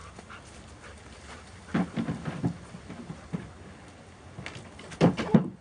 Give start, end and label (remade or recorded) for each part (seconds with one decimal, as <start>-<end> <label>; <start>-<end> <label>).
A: 0.0-5.6 recorded